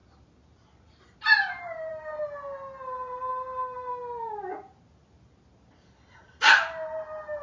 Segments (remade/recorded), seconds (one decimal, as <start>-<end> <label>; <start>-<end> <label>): 0.0-7.4 recorded